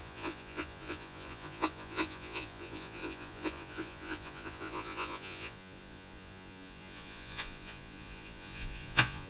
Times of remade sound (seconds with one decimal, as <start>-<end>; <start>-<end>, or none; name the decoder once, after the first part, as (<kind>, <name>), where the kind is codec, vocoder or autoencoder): 0.0-9.3 (vocoder, Vocos)